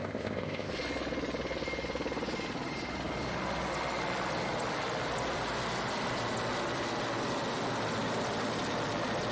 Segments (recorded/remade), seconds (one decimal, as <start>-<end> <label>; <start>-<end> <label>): 0.0-0.7 remade; 0.7-9.3 recorded